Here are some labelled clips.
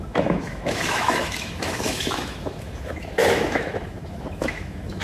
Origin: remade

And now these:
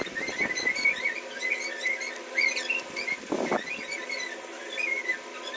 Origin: recorded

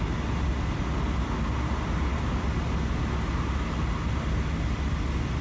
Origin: recorded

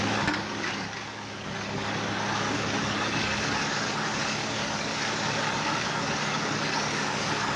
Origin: remade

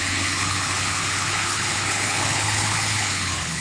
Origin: remade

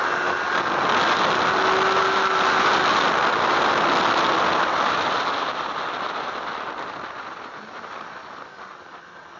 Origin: recorded